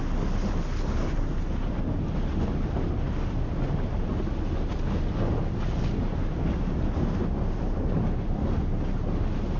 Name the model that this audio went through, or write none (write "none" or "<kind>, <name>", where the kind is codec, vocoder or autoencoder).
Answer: none